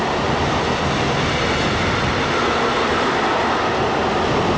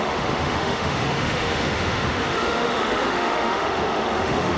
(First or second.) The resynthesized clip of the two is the second